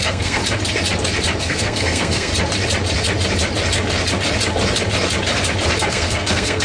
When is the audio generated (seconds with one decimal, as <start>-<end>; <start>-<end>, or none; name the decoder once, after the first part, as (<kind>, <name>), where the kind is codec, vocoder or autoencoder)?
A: 0.0-0.4 (codec, SNAC); 1.4-2.3; 5.9-6.6